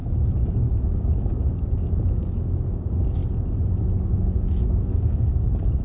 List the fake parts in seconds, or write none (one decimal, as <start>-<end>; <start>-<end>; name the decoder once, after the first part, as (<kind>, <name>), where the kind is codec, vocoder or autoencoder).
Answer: 0.0-3.2 (codec, DAC); 4.0-5.8